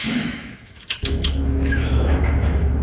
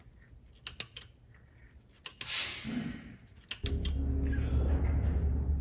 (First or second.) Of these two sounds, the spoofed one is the first